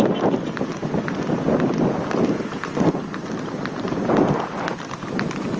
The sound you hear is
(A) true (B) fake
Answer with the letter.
A